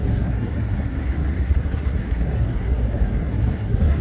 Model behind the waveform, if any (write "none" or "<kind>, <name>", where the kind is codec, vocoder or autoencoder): codec, SNAC